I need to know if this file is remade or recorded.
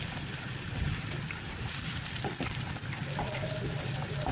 remade